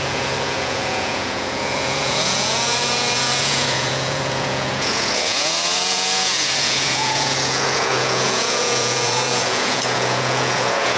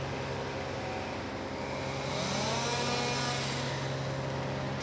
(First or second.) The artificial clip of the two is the first